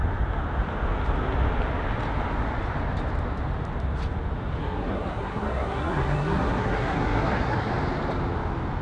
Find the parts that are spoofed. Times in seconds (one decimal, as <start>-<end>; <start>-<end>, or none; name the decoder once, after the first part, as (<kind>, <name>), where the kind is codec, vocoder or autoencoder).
4.6-7.7 (codec, SNAC)